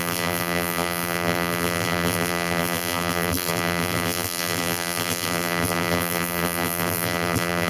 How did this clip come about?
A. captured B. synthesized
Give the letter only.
B